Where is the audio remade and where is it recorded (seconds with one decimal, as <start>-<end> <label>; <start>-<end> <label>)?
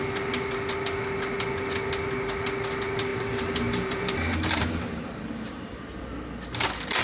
0.0-3.1 recorded; 3.1-5.8 remade; 5.8-7.0 recorded